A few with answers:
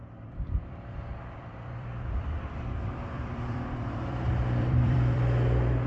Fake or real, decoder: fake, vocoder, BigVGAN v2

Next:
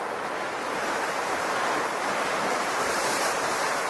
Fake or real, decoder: fake, vocoder, BigVGAN v2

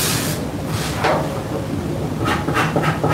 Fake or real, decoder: real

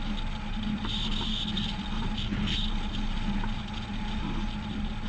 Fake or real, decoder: real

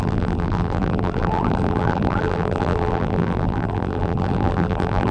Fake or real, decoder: fake, vocoder, BigVGAN v2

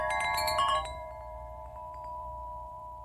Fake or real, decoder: fake, vocoder, BigVGAN v2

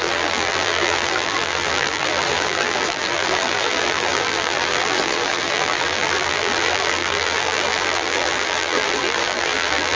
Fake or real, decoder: fake, vocoder, BigVGAN v2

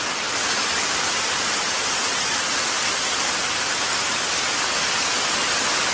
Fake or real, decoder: real